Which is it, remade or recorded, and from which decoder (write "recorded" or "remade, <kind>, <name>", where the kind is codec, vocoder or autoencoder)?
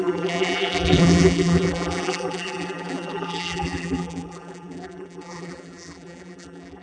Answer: remade, vocoder, BigVGAN v2